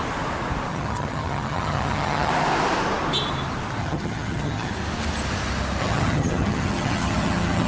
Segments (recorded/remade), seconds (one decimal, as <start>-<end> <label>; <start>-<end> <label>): 0.0-0.7 recorded; 0.7-2.3 remade; 2.3-3.8 recorded; 3.8-4.7 remade; 4.7-5.8 recorded; 5.8-7.7 remade